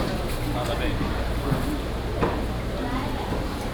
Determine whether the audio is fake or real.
real